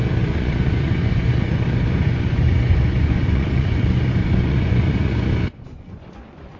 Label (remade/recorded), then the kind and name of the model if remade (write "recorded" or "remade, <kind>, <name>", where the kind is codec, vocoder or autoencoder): remade, vocoder, Vocos